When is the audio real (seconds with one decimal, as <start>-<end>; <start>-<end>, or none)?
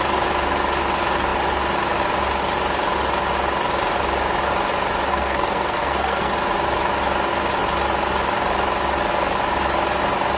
0.0-5.1; 6.3-10.4